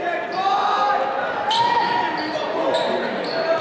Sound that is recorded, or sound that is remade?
recorded